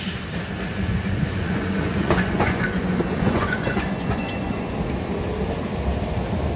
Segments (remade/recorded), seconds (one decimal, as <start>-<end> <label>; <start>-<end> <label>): 0.0-0.7 recorded; 0.7-4.7 remade; 4.7-6.6 recorded